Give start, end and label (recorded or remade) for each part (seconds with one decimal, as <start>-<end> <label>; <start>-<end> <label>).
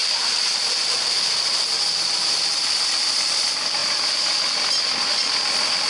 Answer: 0.0-5.9 recorded